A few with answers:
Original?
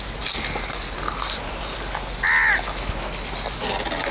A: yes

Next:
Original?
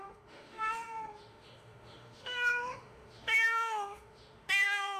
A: no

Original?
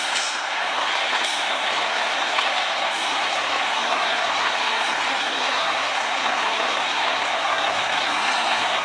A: no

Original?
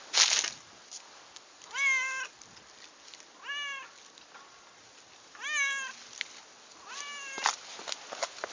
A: yes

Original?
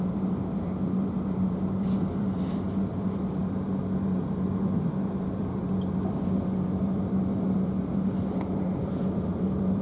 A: no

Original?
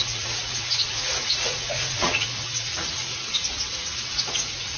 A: no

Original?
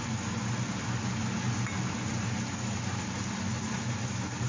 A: yes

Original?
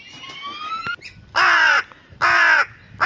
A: yes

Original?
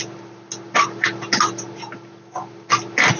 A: yes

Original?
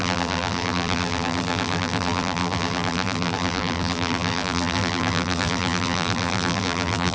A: no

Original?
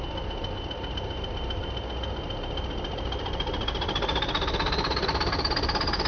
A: yes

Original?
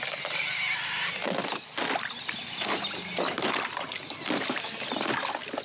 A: yes